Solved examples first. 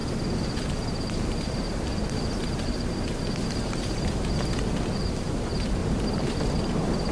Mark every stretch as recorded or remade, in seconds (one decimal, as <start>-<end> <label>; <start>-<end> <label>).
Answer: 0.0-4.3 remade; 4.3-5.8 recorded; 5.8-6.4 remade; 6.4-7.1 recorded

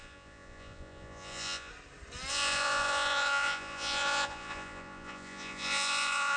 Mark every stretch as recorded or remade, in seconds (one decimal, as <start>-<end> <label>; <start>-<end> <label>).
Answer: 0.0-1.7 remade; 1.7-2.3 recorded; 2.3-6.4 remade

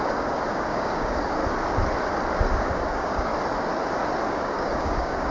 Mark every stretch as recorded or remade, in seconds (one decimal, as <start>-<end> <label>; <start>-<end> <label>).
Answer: 0.0-1.4 remade; 1.4-2.5 recorded; 2.5-3.3 remade; 3.3-4.3 recorded; 4.3-5.3 remade

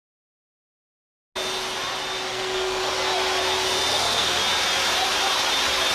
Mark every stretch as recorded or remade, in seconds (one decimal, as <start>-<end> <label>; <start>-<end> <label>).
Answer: 0.0-2.3 recorded; 2.3-2.9 remade; 2.9-3.9 recorded; 3.9-4.4 remade; 4.4-5.9 recorded

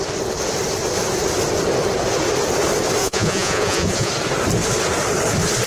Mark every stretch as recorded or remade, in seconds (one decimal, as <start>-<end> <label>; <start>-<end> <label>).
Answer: 0.0-3.0 recorded; 3.0-4.1 remade; 4.1-5.7 recorded

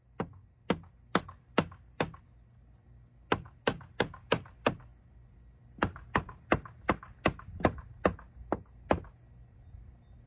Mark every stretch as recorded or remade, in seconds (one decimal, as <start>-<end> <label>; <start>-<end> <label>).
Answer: 0.0-10.3 recorded